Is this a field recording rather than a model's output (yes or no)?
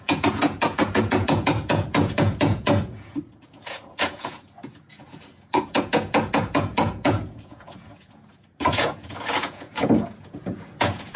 no